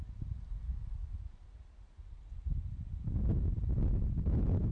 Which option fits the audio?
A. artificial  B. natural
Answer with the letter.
B